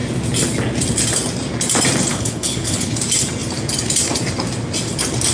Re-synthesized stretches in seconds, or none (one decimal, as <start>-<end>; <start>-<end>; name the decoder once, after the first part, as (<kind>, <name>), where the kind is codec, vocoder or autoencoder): 2.1-3.0 (codec, HILCodec)